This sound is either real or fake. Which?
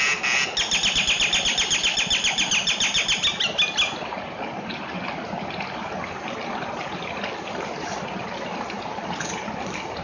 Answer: real